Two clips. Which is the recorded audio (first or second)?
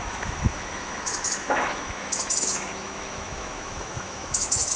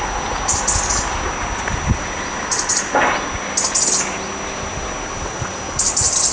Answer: second